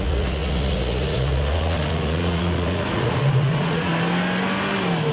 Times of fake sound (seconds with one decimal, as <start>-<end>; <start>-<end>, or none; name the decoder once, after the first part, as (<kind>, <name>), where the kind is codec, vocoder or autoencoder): 0.0-3.9 (vocoder, Vocos)